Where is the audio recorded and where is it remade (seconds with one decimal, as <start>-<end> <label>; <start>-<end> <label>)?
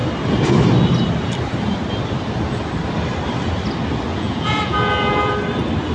0.0-4.1 recorded; 4.1-5.3 remade; 5.3-5.9 recorded